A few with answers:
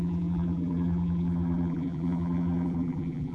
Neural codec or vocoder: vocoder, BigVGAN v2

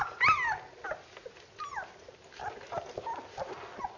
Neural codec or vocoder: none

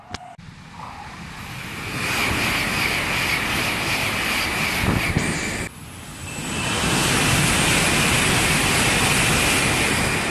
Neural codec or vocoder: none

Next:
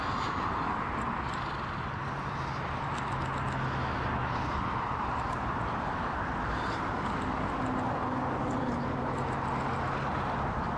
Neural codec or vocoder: none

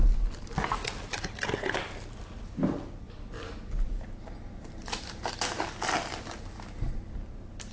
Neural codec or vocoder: none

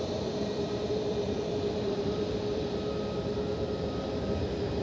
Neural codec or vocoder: vocoder, BigVGAN v2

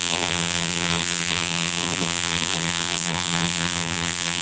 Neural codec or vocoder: vocoder, BigVGAN v2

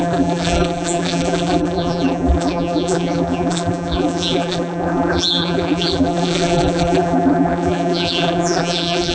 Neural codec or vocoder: vocoder, BigVGAN v2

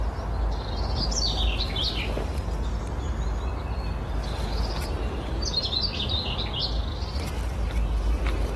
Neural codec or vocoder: none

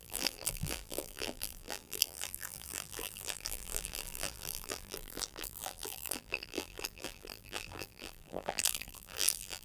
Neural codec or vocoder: vocoder, BigVGAN v2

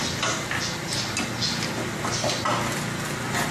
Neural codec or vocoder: none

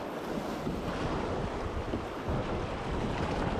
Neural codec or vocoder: none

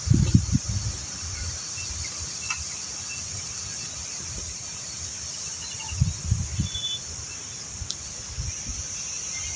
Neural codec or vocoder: none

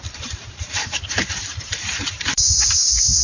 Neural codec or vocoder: vocoder, BigVGAN v2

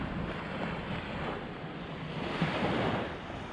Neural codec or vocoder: none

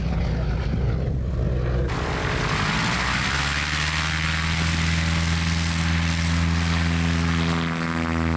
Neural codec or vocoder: none